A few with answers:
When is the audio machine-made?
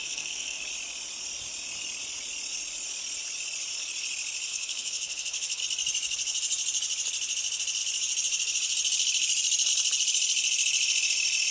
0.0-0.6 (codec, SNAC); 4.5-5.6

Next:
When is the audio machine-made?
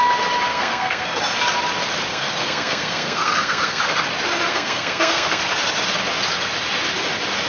0.5-1.2 (codec, SNAC); 2.1-3.8; 4.5-5.4